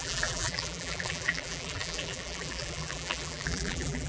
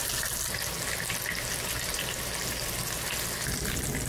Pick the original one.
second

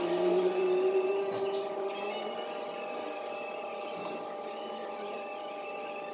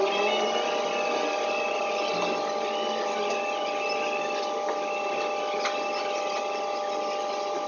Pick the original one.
second